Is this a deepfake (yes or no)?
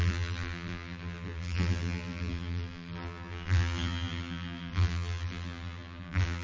yes